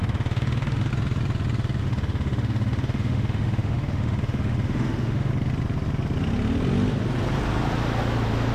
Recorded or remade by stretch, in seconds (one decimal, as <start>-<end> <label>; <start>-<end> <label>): 0.0-0.9 remade; 0.9-1.8 recorded; 1.8-5.3 remade; 5.3-8.5 recorded